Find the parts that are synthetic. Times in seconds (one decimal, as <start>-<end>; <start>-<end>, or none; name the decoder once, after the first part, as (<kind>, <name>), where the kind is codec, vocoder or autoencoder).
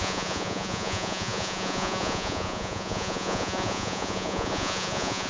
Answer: 0.0-5.3 (vocoder, Vocos)